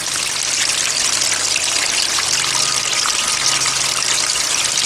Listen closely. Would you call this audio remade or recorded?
recorded